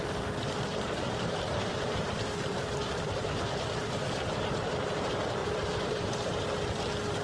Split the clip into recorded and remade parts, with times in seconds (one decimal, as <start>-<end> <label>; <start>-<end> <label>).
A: 0.0-0.7 recorded; 0.7-4.6 remade; 4.6-5.4 recorded; 5.4-6.1 remade; 6.1-7.2 recorded